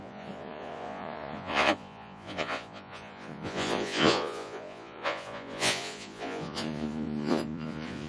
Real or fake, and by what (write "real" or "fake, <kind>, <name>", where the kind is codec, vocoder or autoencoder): fake, vocoder, Vocos